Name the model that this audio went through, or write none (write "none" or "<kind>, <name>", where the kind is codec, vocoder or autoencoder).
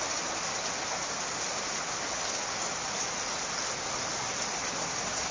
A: none